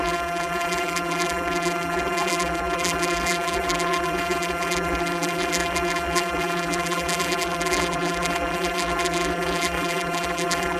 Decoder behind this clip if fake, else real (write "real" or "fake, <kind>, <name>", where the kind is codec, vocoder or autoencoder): fake, vocoder, BigVGAN v2